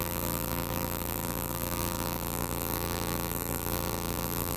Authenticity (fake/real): fake